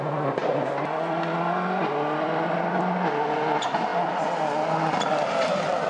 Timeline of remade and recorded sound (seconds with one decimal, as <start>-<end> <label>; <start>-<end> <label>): 0.0-5.9 recorded

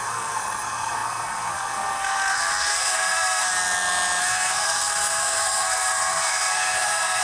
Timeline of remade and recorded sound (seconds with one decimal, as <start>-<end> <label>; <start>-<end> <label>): 0.0-3.5 remade; 3.5-4.2 recorded; 4.2-7.2 remade